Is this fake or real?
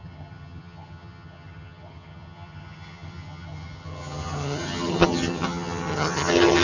fake